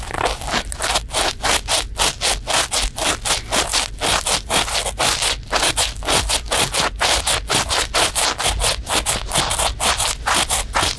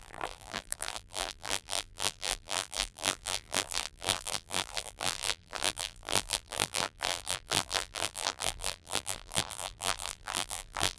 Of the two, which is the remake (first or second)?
second